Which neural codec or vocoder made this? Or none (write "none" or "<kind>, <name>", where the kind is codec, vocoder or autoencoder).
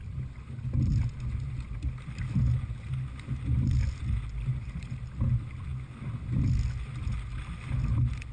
none